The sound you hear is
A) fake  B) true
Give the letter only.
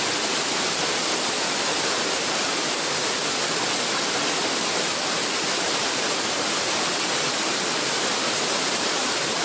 B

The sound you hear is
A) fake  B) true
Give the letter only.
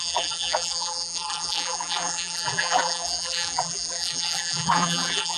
A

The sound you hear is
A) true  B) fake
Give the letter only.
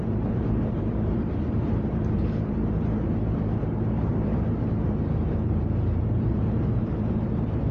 B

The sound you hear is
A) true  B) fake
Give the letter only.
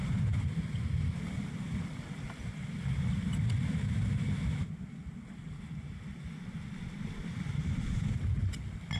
A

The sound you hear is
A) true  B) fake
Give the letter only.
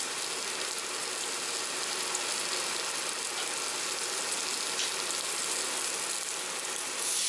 A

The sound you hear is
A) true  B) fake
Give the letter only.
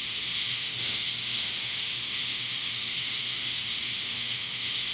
B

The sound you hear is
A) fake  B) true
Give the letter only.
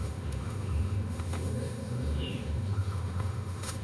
A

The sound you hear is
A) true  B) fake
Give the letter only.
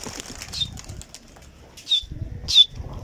A